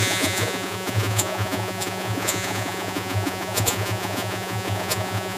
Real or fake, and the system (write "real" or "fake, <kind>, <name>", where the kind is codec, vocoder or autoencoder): fake, vocoder, Vocos